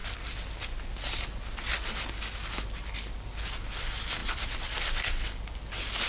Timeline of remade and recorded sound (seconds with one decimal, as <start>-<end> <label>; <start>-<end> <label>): 0.0-6.1 recorded